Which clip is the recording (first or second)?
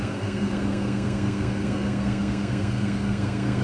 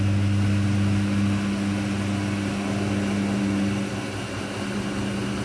second